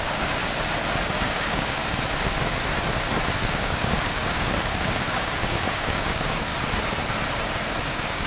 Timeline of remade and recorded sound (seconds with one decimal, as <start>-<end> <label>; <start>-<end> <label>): 0.0-0.4 remade; 0.4-1.1 recorded; 1.1-1.8 remade; 1.8-3.4 recorded; 3.4-6.5 remade; 6.5-7.9 recorded; 7.9-8.3 remade